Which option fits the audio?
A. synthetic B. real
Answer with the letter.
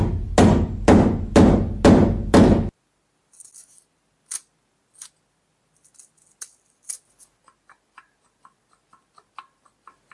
B